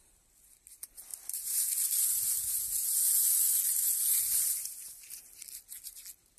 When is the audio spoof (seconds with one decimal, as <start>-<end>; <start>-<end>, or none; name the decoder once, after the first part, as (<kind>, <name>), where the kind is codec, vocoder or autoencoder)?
none